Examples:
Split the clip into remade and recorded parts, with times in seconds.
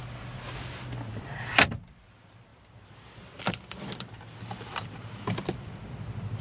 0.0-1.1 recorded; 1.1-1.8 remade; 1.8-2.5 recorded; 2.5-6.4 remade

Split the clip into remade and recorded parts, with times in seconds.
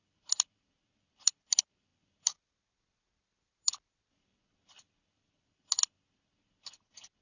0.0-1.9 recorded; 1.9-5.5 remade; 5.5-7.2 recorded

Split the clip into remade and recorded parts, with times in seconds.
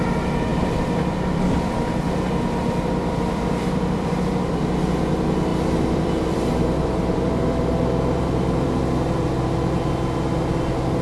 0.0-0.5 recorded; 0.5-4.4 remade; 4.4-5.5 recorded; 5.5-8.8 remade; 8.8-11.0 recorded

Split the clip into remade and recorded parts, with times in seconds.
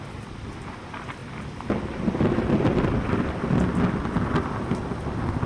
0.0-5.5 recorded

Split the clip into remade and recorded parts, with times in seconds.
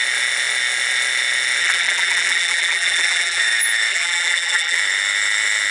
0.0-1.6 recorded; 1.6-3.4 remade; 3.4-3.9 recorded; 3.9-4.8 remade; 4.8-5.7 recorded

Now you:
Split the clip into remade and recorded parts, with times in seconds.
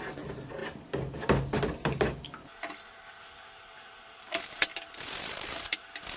0.0-0.6 remade; 0.6-4.3 recorded; 4.3-4.7 remade; 4.7-5.2 recorded; 5.2-6.2 remade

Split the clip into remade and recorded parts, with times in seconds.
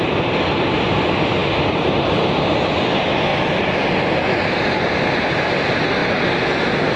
0.0-7.0 recorded